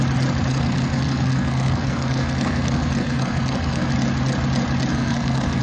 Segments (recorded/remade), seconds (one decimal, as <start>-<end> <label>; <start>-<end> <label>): 0.0-0.5 recorded; 0.5-3.9 remade; 3.9-4.9 recorded; 4.9-5.6 remade